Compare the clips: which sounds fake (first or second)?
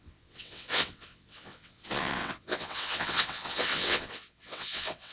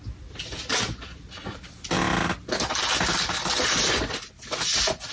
first